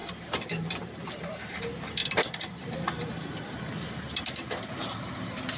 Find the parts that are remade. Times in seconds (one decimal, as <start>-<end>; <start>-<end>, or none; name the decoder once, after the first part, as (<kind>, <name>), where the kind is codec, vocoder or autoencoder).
0.0-1.6 (vocoder, BigVGAN v2)